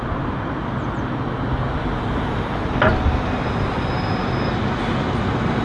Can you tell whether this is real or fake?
real